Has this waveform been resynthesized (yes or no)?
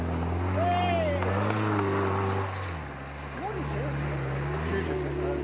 no